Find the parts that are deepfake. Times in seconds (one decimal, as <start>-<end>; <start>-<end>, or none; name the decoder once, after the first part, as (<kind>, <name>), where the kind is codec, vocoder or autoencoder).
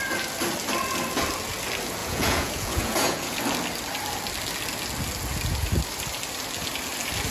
2.0-3.4 (vocoder, Vocos)